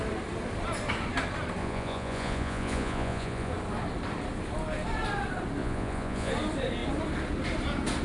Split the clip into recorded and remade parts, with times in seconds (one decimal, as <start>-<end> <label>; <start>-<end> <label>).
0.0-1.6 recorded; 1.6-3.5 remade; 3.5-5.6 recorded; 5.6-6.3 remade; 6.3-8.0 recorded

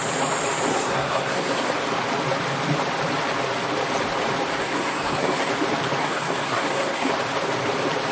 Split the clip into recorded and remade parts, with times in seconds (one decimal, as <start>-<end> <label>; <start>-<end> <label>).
0.0-0.7 recorded; 0.7-1.7 remade; 1.7-4.6 recorded; 4.6-5.5 remade; 5.5-6.0 recorded; 6.0-7.1 remade; 7.1-8.1 recorded

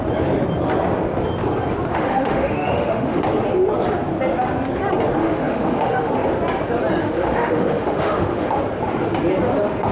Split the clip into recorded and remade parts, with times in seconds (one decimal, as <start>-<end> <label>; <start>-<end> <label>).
0.0-1.9 recorded; 1.9-3.2 remade; 3.2-5.2 recorded; 5.2-6.1 remade; 6.1-7.0 recorded; 7.0-8.6 remade; 8.6-9.9 recorded